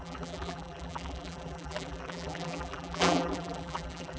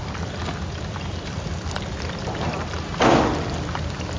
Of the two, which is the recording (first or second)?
second